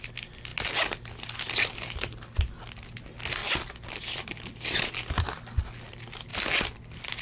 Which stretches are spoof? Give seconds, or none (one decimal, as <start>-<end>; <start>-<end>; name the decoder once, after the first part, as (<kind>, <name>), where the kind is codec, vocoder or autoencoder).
none